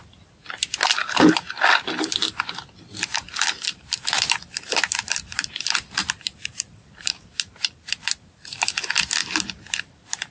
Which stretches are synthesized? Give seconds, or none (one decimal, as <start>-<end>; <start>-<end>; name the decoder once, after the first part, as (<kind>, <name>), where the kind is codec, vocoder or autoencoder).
3.1-8.2 (vocoder, BigVGAN v2); 9.2-10.3